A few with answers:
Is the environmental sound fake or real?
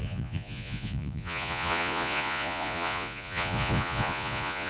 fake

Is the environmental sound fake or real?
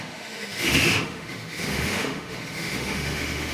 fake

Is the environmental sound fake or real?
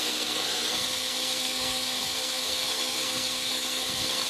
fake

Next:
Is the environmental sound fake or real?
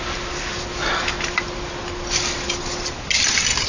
real